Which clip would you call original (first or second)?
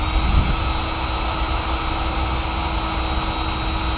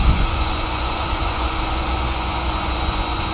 first